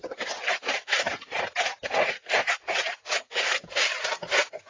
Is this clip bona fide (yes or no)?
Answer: yes